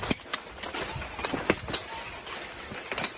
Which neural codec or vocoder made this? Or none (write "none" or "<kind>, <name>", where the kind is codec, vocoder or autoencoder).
none